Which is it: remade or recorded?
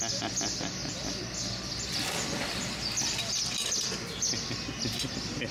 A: recorded